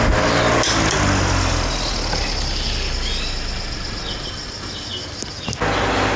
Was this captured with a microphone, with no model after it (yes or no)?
yes